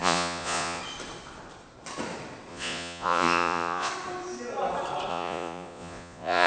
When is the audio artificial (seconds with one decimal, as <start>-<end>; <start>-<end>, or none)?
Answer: 0.0-0.8; 2.5-3.9; 5.1-6.5